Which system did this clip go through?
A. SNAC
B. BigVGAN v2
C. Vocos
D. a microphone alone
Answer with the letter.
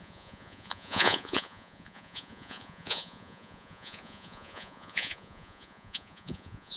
C